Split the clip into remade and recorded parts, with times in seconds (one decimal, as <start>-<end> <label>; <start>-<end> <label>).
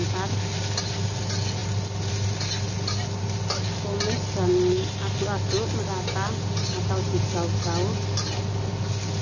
0.0-9.2 recorded